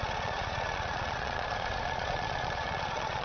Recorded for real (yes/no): no